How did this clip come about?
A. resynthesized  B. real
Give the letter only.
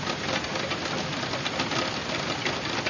B